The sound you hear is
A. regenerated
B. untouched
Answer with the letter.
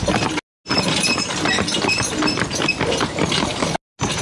B